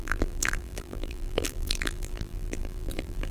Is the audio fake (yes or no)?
yes